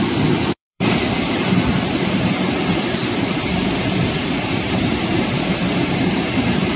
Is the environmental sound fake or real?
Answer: fake